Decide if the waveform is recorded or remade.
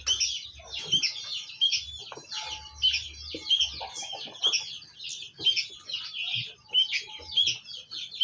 recorded